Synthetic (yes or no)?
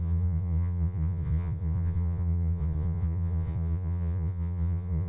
yes